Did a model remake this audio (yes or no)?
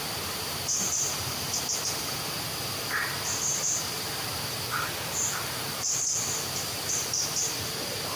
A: yes